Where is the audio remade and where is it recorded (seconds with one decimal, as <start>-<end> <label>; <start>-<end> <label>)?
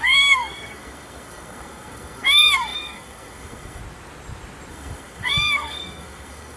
0.0-3.8 remade; 3.8-4.7 recorded; 4.7-6.6 remade